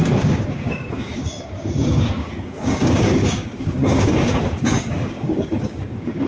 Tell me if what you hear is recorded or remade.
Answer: remade